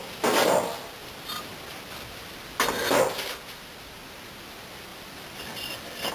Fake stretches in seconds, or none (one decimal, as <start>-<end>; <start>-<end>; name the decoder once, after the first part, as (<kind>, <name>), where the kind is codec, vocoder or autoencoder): 4.9-6.1 (vocoder, BigVGAN v2)